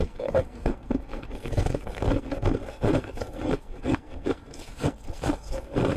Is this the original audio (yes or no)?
no